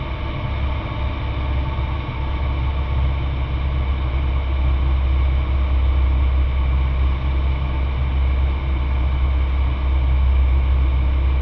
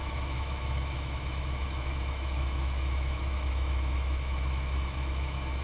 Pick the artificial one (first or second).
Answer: second